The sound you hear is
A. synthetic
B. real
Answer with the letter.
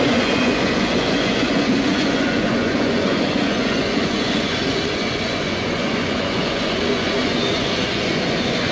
A